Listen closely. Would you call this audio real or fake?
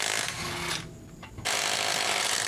real